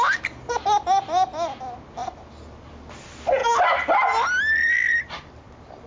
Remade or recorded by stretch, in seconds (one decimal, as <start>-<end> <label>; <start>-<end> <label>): 0.0-5.9 recorded